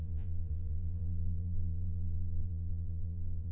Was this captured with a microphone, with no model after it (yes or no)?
no